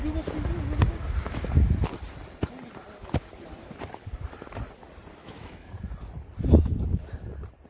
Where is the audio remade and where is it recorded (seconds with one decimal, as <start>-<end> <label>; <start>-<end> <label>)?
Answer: 0.0-5.2 recorded; 5.2-5.7 remade; 5.7-7.7 recorded

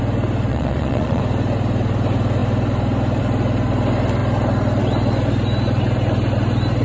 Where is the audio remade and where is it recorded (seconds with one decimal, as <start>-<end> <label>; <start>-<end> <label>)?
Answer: 0.0-0.5 recorded; 0.5-1.2 remade; 1.2-6.8 recorded

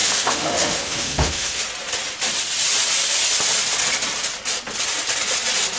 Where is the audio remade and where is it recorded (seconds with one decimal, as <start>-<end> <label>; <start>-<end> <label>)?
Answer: 0.0-1.6 remade; 1.6-5.8 recorded

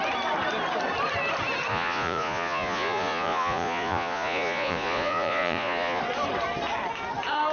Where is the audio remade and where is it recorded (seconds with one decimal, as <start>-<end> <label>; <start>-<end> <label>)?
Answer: 0.0-1.7 recorded; 1.7-6.0 remade; 6.0-7.5 recorded

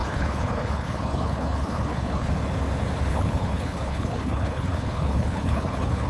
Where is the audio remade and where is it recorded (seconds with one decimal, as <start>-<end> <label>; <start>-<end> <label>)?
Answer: 0.0-2.3 remade; 2.3-3.1 recorded; 3.1-6.1 remade

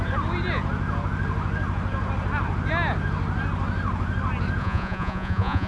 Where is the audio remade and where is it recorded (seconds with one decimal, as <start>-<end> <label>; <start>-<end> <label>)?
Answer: 0.0-4.6 recorded; 4.6-5.7 remade

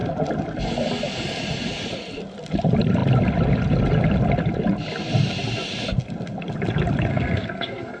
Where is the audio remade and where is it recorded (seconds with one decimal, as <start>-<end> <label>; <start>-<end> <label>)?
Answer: 0.0-7.1 recorded; 7.1-8.0 remade